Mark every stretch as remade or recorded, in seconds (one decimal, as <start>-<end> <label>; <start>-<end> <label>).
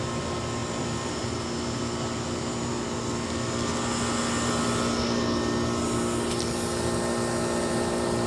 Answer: 0.0-0.6 recorded; 0.6-1.2 remade; 1.2-8.3 recorded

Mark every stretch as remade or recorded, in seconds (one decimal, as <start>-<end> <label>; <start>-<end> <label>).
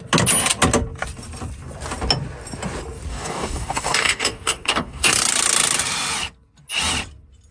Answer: 0.0-3.1 recorded; 3.1-5.1 remade; 5.1-7.5 recorded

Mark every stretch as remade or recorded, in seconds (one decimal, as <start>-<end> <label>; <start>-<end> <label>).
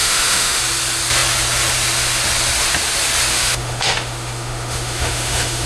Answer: 0.0-0.6 remade; 0.6-3.3 recorded; 3.3-5.7 remade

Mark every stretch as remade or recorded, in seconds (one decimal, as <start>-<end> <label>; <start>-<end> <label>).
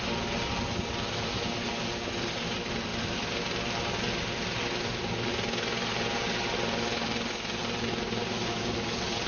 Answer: 0.0-9.3 recorded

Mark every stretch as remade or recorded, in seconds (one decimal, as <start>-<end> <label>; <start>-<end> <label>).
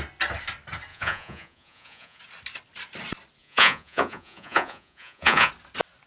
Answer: 0.0-0.9 recorded; 0.9-2.2 remade; 2.2-3.4 recorded; 3.4-5.5 remade; 5.5-6.1 recorded